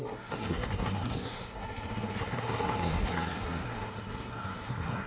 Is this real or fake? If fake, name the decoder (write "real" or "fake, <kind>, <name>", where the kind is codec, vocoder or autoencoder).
fake, codec, SNAC